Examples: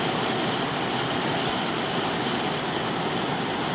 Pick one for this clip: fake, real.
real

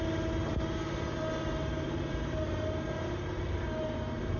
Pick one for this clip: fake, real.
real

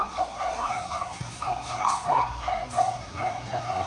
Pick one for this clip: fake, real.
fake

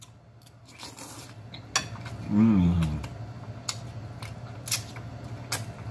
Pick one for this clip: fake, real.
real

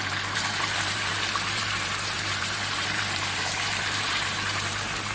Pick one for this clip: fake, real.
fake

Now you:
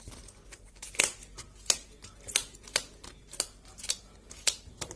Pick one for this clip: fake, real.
real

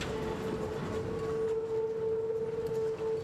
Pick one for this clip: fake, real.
real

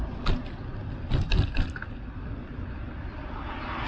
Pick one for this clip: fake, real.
real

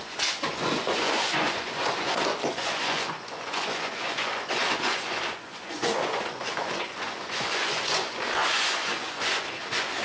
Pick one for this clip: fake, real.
fake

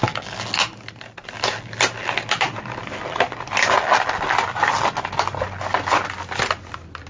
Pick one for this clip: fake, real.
real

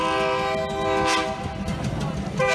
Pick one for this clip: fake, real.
real